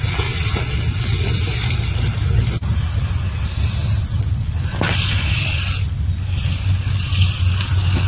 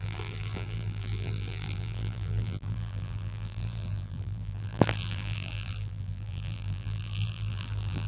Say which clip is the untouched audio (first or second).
first